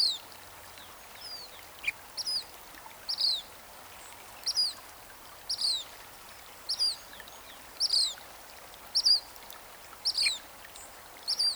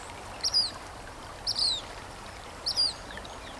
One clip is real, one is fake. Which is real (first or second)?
first